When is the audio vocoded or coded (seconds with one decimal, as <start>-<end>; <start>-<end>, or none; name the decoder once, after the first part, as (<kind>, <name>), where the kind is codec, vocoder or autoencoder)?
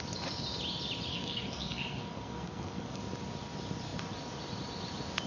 1.1-3.0 (codec, SNAC)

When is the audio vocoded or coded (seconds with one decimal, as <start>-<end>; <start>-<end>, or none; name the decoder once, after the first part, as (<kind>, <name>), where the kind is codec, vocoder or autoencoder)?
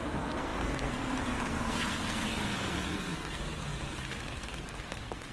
0.0-5.3 (codec, SNAC)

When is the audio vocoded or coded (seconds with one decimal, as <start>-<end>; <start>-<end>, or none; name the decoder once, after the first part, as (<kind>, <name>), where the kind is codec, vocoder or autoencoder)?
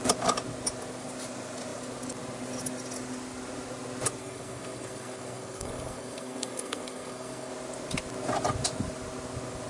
4.2-7.5 (codec, SNAC)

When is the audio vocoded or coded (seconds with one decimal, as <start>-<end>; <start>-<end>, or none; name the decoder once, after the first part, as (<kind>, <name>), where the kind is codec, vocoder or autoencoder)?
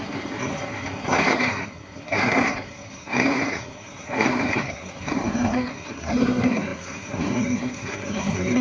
0.0-8.6 (codec, SNAC)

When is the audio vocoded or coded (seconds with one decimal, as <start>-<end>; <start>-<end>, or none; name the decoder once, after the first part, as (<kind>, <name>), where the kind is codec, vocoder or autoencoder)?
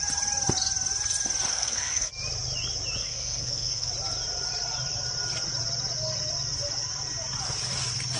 1.5-2.1 (codec, SNAC); 3.0-3.9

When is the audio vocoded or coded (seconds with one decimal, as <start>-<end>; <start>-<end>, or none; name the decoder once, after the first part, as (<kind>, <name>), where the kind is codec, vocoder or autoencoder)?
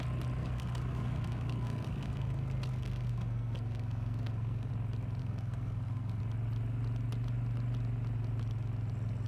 0.4-4.7 (codec, SNAC); 5.2-6.2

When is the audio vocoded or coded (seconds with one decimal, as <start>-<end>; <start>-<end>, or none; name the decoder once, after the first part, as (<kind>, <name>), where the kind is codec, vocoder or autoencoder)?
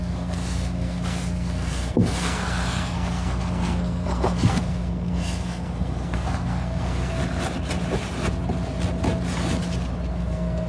0.0-7.2 (codec, SNAC); 10.1-10.7